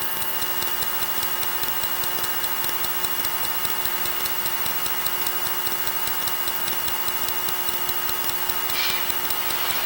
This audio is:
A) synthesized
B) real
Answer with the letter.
B